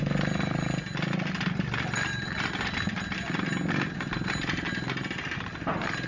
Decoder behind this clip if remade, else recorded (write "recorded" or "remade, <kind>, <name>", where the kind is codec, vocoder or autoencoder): recorded